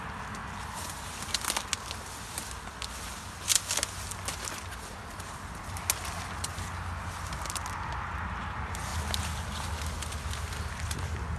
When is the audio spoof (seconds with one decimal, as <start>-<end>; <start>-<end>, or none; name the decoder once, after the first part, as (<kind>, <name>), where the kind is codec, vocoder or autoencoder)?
none